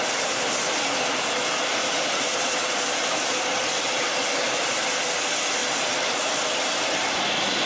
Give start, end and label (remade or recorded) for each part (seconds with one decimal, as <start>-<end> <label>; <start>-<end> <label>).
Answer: 0.0-5.6 recorded; 5.6-6.4 remade; 6.4-7.7 recorded

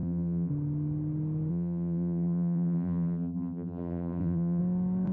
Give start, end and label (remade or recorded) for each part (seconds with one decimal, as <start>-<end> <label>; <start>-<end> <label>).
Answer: 0.0-0.5 remade; 0.5-1.5 recorded; 1.5-4.6 remade; 4.6-5.1 recorded

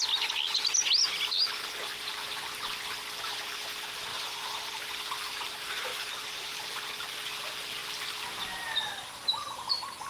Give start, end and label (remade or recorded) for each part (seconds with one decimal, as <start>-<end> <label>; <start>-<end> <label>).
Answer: 0.0-4.1 recorded; 4.1-4.8 remade; 4.8-5.9 recorded; 5.9-6.6 remade; 6.6-10.1 recorded

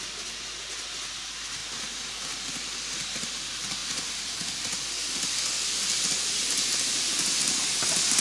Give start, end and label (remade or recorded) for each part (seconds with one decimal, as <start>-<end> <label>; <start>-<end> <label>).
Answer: 0.0-3.8 recorded; 3.8-5.7 remade; 5.7-8.2 recorded

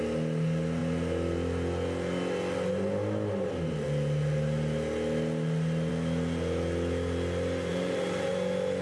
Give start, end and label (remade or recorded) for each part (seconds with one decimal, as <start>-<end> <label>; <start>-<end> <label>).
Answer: 0.0-7.7 recorded; 7.7-8.3 remade; 8.3-8.8 recorded

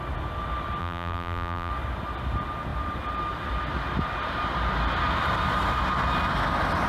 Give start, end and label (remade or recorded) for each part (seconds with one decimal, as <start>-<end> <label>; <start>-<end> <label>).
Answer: 0.0-0.8 recorded; 0.8-1.7 remade; 1.7-6.9 recorded